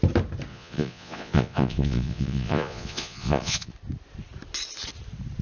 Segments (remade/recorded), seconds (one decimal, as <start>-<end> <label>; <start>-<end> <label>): 0.0-0.5 recorded; 0.5-3.7 remade; 3.7-5.4 recorded